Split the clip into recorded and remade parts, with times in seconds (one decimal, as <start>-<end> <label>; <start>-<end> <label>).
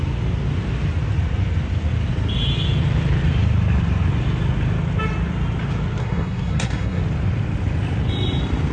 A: 0.0-6.0 recorded; 6.0-7.0 remade; 7.0-8.7 recorded